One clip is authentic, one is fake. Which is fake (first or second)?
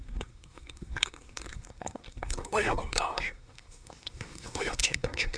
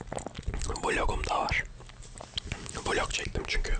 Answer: first